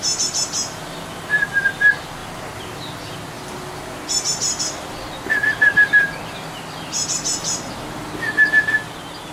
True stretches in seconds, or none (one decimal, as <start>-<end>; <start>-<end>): 0.0-9.3